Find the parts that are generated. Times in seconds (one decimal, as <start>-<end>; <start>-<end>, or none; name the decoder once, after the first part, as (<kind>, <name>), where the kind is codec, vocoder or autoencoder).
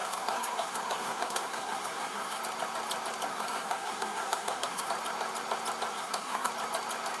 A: 0.0-2.4 (codec, SNAC); 3.3-4.9; 5.9-6.5